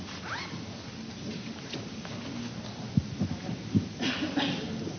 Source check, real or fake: real